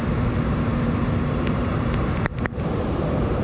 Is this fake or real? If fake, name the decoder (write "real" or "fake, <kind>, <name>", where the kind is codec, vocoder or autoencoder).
fake, vocoder, BigVGAN v2